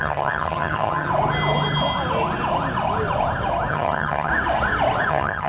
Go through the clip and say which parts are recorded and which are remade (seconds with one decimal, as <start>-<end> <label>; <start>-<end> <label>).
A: 0.0-1.1 remade; 1.1-3.7 recorded; 3.7-4.3 remade; 4.3-5.1 recorded; 5.1-5.5 remade